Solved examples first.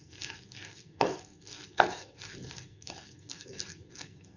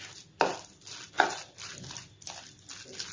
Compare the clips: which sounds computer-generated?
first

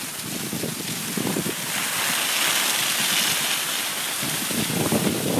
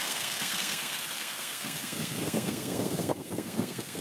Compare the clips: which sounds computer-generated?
second